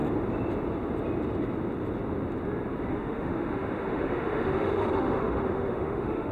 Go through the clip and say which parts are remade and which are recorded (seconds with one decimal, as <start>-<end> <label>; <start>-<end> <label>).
0.0-2.9 recorded; 2.9-6.3 remade